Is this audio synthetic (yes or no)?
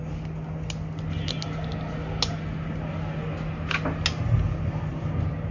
no